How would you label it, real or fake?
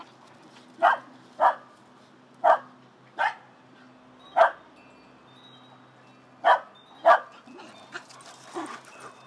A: real